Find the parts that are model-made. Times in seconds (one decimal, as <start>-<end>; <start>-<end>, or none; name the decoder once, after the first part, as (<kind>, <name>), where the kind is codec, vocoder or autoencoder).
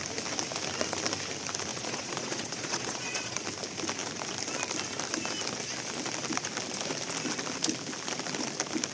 1.7-3.4 (vocoder, Vocos)